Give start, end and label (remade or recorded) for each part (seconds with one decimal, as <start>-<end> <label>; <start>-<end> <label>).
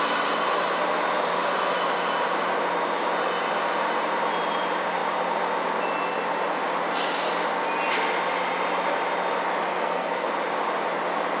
0.0-9.7 recorded; 9.7-10.3 remade; 10.3-11.4 recorded